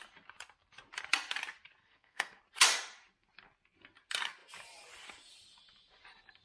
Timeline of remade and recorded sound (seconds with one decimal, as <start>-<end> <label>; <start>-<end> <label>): 0.0-1.8 recorded; 1.8-2.4 remade; 2.4-6.4 recorded